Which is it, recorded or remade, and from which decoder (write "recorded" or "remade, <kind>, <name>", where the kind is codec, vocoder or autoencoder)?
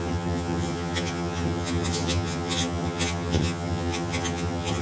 remade, vocoder, HiFi-GAN